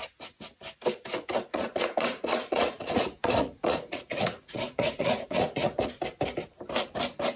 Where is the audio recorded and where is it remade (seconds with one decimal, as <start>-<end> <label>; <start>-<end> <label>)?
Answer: 0.0-1.5 recorded; 1.5-5.9 remade; 5.9-7.4 recorded